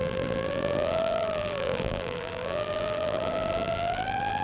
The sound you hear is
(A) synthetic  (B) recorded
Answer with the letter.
A